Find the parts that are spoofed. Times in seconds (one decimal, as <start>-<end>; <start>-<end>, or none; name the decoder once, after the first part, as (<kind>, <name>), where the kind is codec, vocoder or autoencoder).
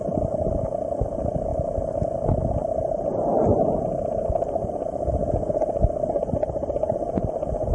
none